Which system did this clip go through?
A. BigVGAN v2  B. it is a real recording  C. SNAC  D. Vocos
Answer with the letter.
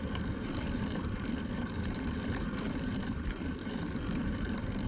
A